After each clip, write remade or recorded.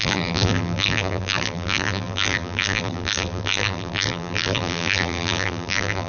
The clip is remade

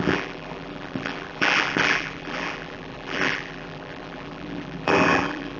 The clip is remade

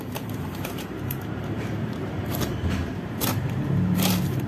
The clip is remade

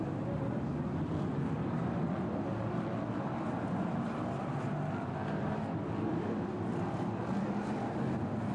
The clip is recorded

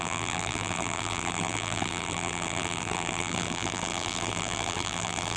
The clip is remade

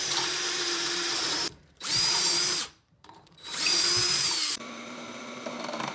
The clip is remade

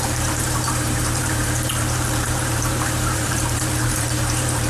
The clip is remade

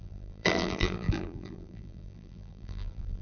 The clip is remade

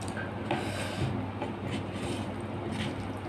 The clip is recorded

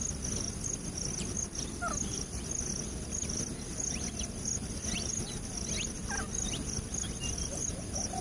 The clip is recorded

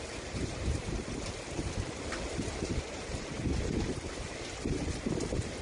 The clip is remade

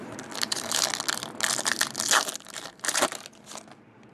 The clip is recorded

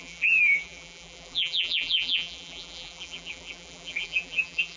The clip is remade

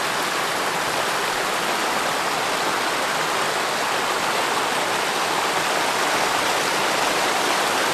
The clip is recorded